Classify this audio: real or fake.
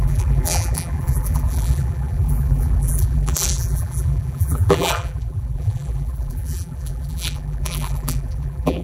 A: fake